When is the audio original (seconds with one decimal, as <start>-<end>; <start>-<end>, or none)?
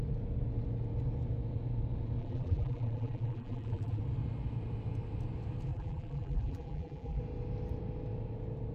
0.0-2.2; 4.0-5.7; 7.2-8.7